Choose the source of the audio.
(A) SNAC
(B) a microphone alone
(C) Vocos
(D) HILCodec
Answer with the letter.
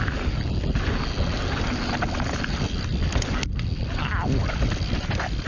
B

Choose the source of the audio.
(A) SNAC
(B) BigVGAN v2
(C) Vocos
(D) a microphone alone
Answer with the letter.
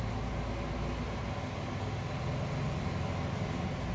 D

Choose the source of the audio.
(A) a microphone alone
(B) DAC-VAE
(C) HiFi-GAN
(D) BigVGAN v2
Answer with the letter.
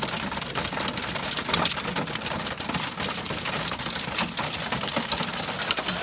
A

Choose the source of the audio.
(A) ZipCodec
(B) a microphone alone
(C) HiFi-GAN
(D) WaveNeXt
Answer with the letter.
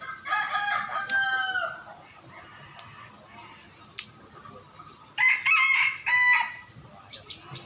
B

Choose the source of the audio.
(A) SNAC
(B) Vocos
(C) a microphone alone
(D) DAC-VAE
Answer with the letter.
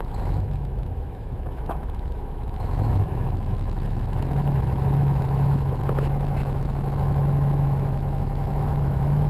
D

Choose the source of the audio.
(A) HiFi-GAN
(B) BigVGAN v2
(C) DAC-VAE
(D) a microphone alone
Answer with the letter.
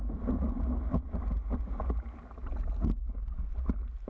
D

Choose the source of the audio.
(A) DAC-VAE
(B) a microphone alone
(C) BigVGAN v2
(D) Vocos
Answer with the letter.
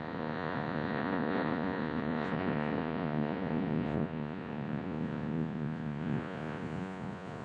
D